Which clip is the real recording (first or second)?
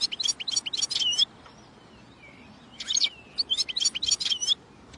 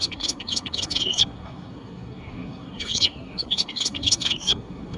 first